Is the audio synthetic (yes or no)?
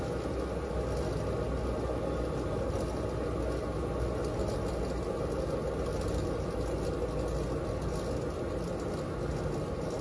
no